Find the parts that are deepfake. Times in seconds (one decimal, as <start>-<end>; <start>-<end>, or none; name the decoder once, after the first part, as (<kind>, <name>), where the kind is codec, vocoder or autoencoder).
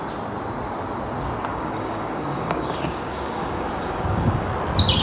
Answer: 1.5-4.5 (codec, DAC)